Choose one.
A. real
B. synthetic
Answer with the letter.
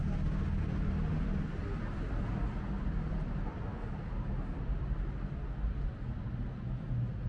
A